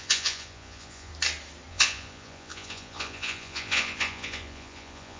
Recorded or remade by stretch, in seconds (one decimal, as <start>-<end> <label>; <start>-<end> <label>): 0.0-1.1 remade; 1.1-1.7 recorded; 1.7-5.2 remade